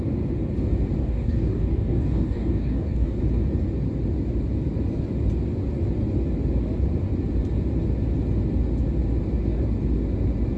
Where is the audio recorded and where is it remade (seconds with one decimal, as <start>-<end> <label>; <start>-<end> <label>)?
0.0-1.0 recorded; 1.0-3.2 remade; 3.2-10.6 recorded